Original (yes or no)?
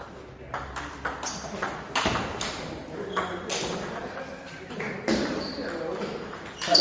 yes